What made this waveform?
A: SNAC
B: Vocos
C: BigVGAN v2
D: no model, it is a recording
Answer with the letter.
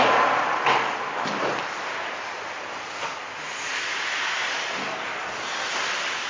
D